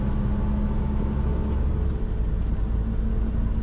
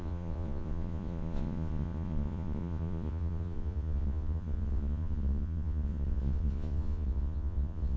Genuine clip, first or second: first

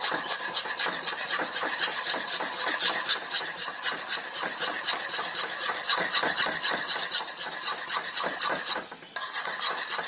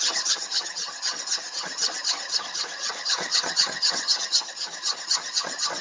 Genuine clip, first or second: first